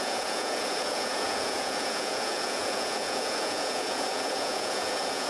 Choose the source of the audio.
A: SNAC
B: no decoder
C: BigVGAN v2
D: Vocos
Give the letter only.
D